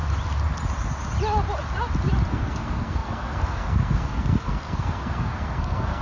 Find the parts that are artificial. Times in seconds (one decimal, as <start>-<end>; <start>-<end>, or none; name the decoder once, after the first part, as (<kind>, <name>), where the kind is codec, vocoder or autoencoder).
2.3-6.0 (codec, SNAC)